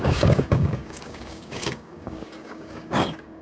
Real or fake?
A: fake